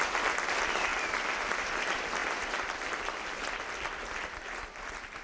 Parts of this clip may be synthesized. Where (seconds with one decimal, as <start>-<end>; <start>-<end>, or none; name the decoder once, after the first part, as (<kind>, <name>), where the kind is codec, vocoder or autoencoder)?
0.0-0.9 (vocoder, BigVGAN v2); 1.5-5.2